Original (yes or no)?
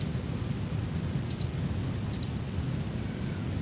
yes